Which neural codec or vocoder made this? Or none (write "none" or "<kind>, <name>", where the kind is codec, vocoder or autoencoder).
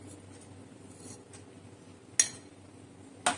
none